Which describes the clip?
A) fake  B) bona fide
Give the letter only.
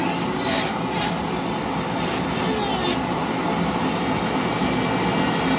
B